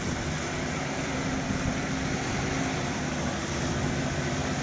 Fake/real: fake